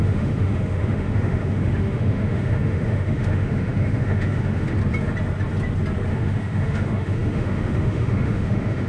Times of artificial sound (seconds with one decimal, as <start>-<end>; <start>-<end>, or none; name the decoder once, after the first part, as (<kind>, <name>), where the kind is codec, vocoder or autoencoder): 0.0-4.8 (autoencoder, DAC-VAE); 6.1-8.9